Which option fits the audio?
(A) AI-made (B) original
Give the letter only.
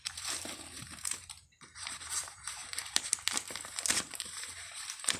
A